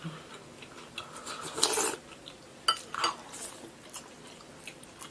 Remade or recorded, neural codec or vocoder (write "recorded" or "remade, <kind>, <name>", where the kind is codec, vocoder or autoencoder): recorded